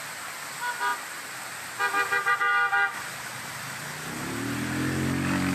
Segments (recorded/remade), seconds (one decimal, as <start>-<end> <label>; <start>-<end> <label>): 0.0-5.5 recorded